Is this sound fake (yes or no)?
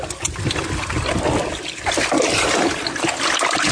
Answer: no